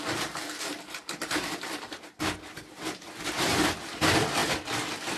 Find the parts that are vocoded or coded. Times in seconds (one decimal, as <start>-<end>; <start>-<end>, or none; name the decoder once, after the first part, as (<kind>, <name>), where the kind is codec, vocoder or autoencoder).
0.7-3.8 (vocoder, BigVGAN v2)